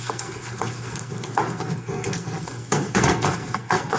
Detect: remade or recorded remade